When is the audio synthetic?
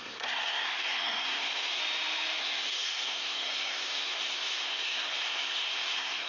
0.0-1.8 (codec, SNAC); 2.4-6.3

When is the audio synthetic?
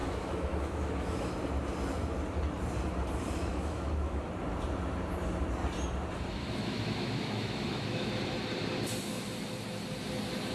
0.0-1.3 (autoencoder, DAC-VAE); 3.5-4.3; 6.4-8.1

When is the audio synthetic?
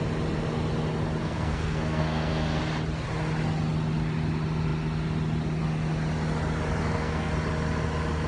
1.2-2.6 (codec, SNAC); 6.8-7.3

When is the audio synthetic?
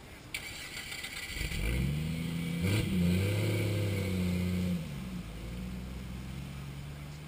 none